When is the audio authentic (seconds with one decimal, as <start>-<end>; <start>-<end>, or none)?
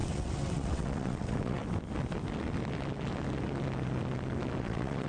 1.6-4.6